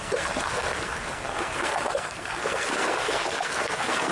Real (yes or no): no